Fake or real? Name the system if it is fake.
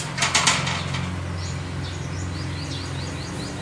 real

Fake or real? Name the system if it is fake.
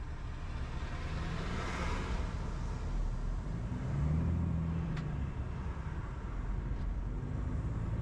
real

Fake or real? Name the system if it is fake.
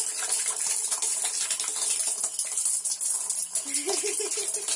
real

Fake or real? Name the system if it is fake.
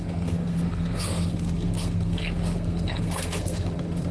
fake, codec, SNAC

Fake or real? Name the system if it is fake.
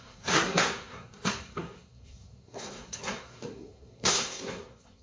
fake, codec, SNAC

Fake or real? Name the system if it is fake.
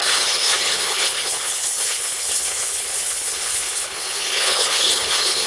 fake, codec, HILCodec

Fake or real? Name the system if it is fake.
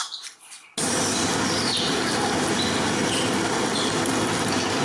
real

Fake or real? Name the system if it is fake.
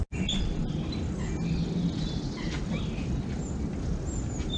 real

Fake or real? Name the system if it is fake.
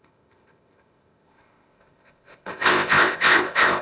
fake, codec, ZipCodec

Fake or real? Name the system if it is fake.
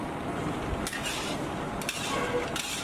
real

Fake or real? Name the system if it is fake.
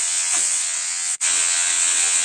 fake, vocoder, WaveNeXt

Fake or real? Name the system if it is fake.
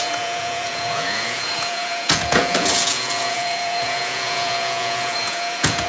fake, vocoder, Vocos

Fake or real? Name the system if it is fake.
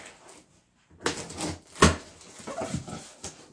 real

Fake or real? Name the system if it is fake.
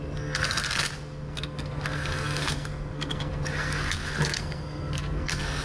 fake, codec, SNAC